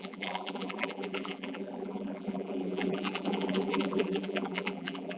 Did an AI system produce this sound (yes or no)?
yes